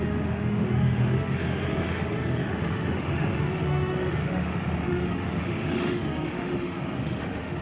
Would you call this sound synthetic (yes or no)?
yes